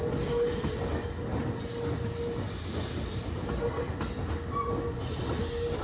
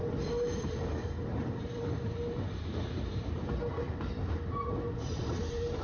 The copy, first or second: second